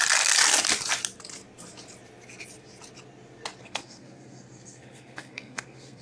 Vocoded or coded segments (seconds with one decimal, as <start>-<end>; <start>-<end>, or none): 3.6-6.0